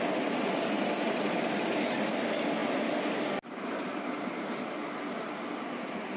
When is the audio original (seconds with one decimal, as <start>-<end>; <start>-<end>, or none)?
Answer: 0.0-6.2